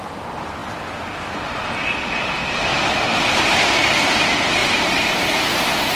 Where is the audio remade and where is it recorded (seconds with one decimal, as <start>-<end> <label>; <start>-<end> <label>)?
0.0-4.6 recorded; 4.6-5.4 remade; 5.4-6.0 recorded